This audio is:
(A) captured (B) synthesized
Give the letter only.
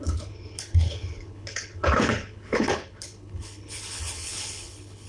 B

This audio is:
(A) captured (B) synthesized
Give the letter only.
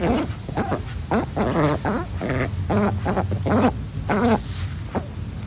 A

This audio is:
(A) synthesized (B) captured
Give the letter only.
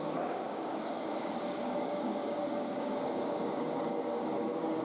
A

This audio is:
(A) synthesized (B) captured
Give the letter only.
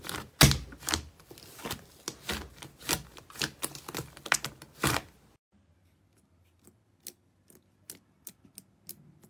B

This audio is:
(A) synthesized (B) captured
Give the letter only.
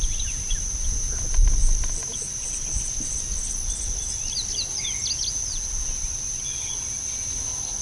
B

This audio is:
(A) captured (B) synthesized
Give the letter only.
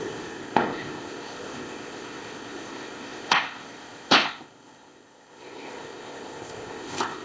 B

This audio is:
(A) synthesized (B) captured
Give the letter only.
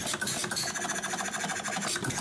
B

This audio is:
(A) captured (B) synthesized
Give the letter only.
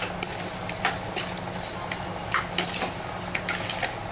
A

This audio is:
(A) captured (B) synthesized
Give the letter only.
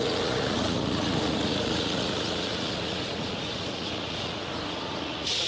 B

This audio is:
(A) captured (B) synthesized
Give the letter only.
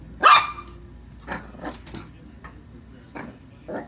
A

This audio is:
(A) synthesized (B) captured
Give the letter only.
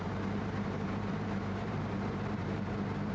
A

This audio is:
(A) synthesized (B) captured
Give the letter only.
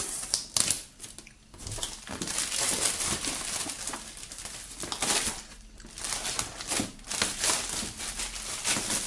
B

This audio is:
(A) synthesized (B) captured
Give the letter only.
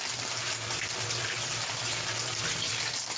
B